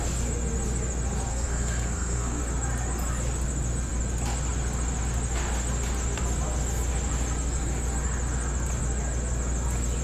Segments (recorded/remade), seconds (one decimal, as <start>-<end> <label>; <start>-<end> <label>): 0.0-1.3 recorded; 1.3-2.4 remade; 2.4-10.0 recorded